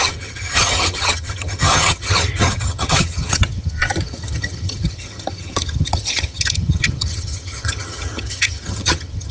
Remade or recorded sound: remade